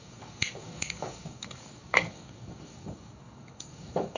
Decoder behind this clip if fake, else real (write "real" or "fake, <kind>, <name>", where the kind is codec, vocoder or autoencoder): fake, codec, DAC